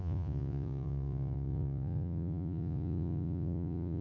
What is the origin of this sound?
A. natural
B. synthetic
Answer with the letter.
B